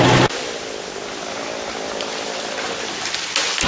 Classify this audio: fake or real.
real